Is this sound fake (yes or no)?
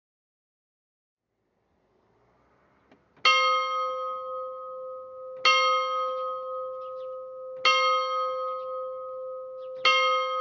no